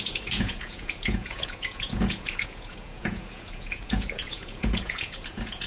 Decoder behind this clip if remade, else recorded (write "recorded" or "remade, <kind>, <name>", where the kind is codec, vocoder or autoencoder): remade, vocoder, Vocos